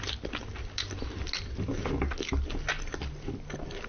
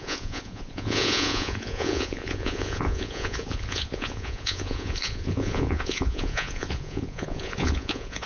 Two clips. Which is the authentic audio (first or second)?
first